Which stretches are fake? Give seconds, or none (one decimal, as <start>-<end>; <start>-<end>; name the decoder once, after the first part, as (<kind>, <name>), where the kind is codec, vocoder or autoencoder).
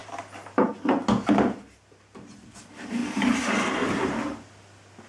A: 0.0-0.7 (vocoder, BigVGAN v2); 3.0-4.1